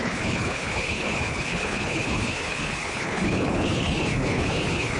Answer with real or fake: fake